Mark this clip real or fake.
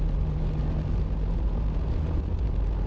real